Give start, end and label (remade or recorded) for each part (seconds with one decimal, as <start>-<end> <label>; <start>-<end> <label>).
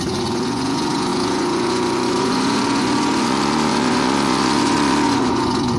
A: 0.0-5.8 remade